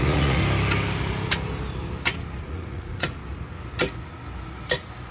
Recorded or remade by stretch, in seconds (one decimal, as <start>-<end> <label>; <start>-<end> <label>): 0.0-0.4 remade; 0.4-2.4 recorded; 2.4-3.2 remade; 3.2-5.1 recorded